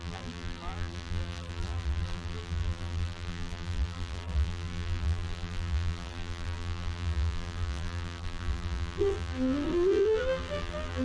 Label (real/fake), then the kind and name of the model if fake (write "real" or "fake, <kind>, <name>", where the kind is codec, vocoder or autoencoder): fake, vocoder, BigVGAN v2